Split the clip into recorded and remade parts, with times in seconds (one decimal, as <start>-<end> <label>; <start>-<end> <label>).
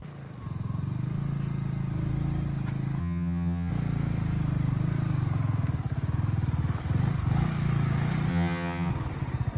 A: 0.0-3.0 recorded; 3.0-3.7 remade; 3.7-8.3 recorded; 8.3-8.9 remade; 8.9-9.6 recorded